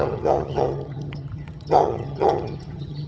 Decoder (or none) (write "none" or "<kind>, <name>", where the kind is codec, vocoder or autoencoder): vocoder, HiFi-GAN